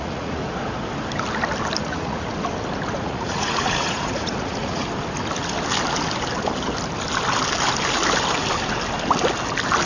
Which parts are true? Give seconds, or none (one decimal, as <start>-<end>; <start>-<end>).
0.4-1.8; 2.3-3.0; 4.8-9.9